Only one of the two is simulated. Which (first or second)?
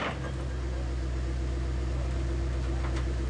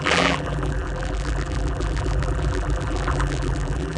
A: second